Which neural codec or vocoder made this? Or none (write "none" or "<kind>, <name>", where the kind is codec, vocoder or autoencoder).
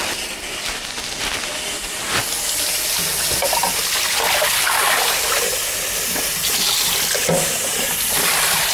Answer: none